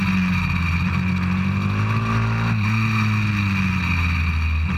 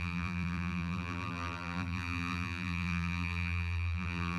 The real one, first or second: first